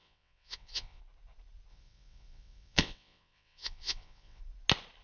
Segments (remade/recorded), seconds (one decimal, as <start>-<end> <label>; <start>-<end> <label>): 0.0-1.0 remade; 1.0-1.7 recorded; 1.7-4.4 remade; 4.4-5.0 recorded